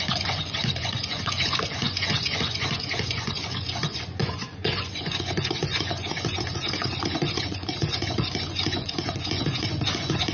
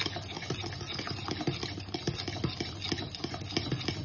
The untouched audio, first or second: second